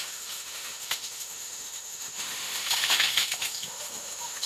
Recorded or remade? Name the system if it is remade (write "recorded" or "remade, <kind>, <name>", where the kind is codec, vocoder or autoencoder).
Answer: remade, autoencoder, DAC-VAE